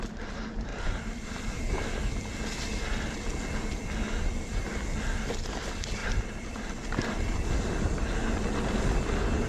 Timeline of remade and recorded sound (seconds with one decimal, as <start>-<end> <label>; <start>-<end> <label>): 0.0-0.7 recorded; 0.7-1.7 remade; 1.7-6.0 recorded; 6.0-6.7 remade; 6.7-9.5 recorded